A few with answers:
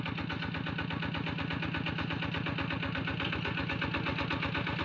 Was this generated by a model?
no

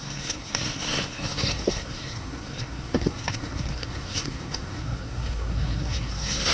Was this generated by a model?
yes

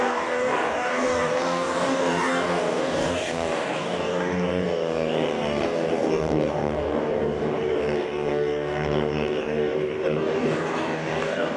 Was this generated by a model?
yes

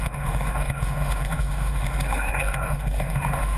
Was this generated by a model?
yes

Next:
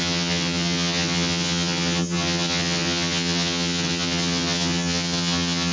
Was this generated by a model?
yes